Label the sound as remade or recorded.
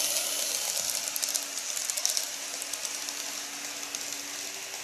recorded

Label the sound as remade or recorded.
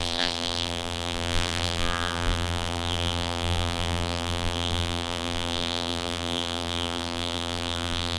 remade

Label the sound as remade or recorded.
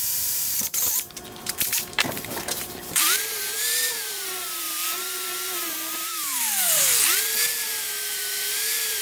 remade